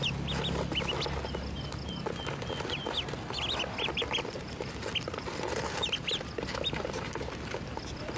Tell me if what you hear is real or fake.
real